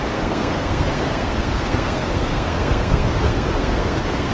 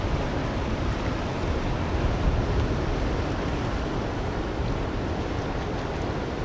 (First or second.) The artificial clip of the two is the first